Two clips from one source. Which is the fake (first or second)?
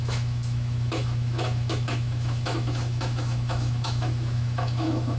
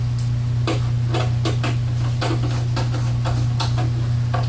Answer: first